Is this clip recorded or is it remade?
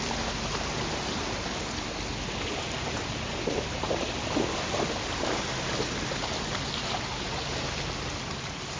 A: recorded